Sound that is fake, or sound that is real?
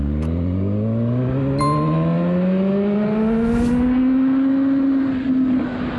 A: real